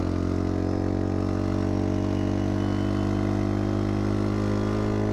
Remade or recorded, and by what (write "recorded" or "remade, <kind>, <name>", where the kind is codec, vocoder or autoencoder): recorded